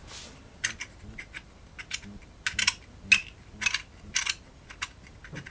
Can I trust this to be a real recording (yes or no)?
yes